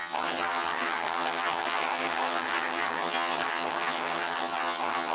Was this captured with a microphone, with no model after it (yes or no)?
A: no